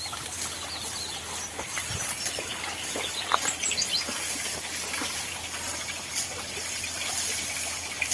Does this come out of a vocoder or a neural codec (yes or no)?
no